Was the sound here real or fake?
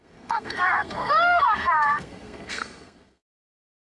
fake